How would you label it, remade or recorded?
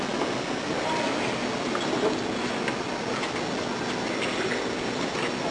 recorded